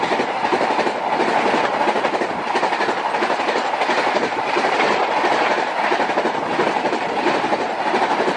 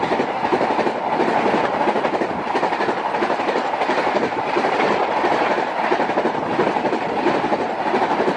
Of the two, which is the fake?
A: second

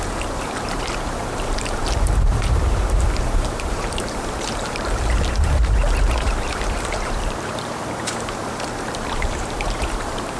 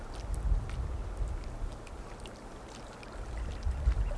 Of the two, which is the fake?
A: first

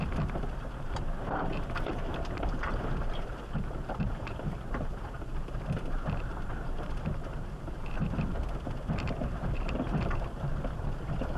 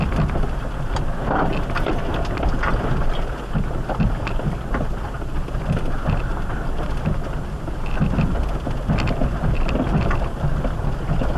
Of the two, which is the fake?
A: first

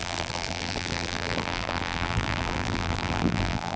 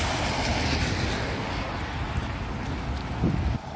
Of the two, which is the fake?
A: first